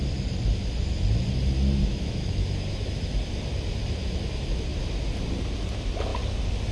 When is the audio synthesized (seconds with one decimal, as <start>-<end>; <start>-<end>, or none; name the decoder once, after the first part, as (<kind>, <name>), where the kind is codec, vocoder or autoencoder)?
1.8-3.1 (autoencoder, DAC-VAE)